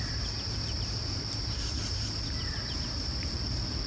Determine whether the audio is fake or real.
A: real